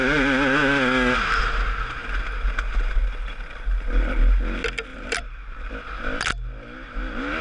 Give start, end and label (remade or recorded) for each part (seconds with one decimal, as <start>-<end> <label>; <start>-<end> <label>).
0.0-4.9 recorded; 4.9-5.7 remade; 5.7-7.4 recorded